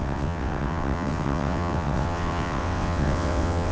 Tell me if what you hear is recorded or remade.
remade